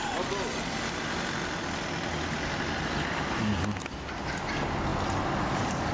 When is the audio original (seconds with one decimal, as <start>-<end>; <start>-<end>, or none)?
0.0-5.9